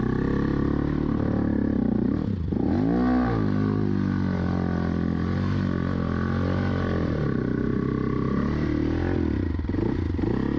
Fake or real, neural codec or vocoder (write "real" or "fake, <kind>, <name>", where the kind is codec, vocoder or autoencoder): real